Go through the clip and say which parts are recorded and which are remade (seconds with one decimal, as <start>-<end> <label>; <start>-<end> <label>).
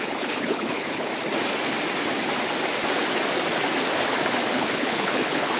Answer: 0.0-1.1 remade; 1.1-4.5 recorded; 4.5-5.6 remade